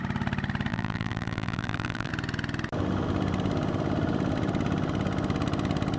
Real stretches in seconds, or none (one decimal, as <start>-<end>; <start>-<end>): 0.0-0.7; 2.1-6.0